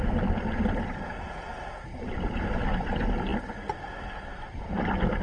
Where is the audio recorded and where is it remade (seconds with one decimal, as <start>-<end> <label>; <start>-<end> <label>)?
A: 0.0-5.2 recorded